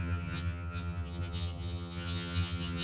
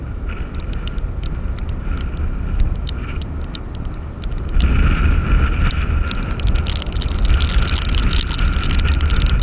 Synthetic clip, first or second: first